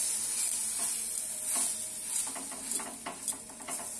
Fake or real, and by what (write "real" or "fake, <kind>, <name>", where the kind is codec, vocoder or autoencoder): real